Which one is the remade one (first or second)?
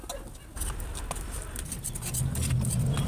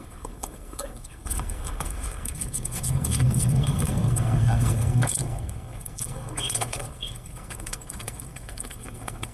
second